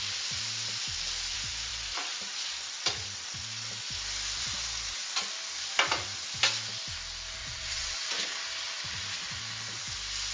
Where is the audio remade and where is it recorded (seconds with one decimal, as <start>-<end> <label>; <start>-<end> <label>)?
0.0-7.4 recorded; 7.4-8.1 remade; 8.1-10.3 recorded